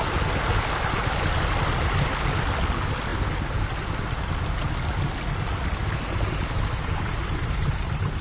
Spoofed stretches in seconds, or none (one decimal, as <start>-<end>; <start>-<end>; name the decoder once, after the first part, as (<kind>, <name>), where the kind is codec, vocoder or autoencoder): 5.8-8.2 (vocoder, BigVGAN v2)